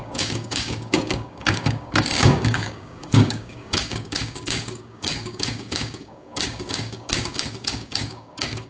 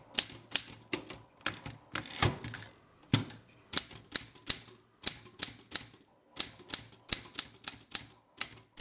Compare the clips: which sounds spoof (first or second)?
first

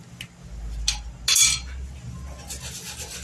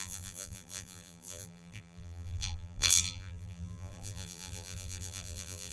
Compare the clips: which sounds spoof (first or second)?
second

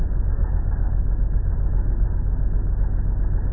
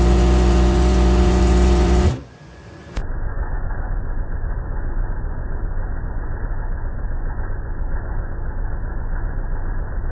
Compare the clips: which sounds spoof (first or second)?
second